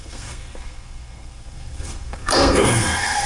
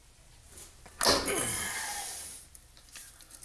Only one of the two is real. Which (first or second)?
second